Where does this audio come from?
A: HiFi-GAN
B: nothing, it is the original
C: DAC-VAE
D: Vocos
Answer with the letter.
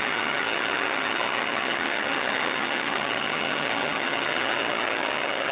A